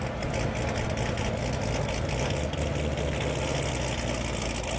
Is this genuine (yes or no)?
yes